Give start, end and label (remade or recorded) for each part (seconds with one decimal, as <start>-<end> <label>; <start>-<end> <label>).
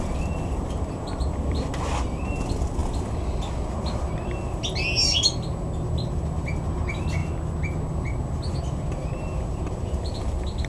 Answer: 0.0-10.7 recorded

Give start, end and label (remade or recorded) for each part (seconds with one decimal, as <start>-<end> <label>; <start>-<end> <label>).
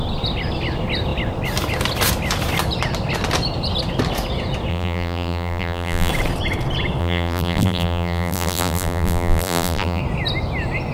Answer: 0.0-4.7 recorded; 4.7-6.1 remade; 6.1-7.0 recorded; 7.0-10.0 remade; 10.0-10.9 recorded